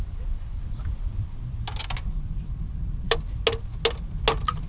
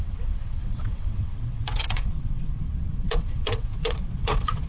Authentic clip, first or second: first